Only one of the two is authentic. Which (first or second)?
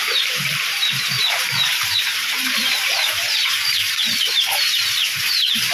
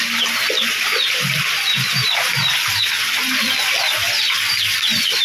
second